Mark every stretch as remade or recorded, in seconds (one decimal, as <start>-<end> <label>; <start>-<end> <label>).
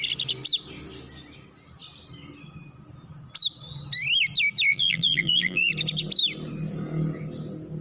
0.0-4.7 recorded; 4.7-5.7 remade; 5.7-7.8 recorded